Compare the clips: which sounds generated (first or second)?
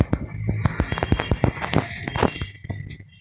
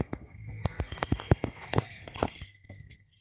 second